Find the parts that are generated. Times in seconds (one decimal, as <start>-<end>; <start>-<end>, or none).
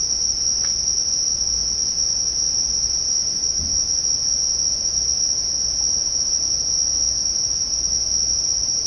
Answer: none